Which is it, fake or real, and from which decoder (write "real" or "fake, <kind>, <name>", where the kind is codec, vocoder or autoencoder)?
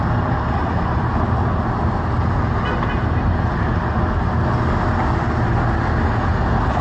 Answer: real